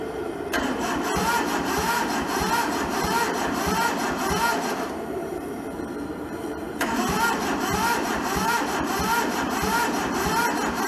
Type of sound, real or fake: fake